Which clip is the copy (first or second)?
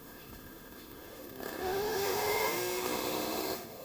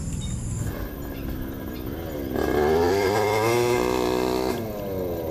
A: first